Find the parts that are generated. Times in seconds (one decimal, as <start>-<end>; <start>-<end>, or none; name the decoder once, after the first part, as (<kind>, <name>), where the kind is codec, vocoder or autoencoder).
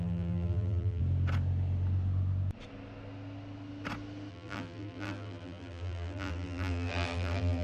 0.0-1.0 (vocoder, BigVGAN v2); 4.3-7.6